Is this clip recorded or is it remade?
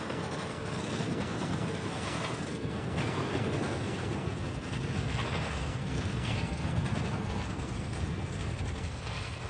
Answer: remade